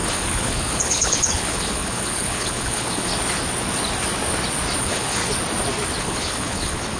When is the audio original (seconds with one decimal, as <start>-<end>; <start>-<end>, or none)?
3.1-4.8; 5.2-6.0